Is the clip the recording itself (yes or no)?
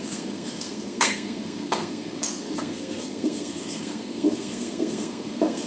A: no